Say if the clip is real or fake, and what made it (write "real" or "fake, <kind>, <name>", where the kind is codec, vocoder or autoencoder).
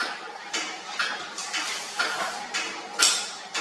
real